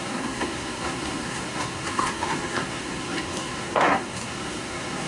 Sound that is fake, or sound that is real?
fake